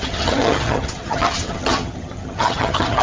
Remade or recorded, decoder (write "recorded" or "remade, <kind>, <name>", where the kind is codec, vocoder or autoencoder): remade, vocoder, HiFi-GAN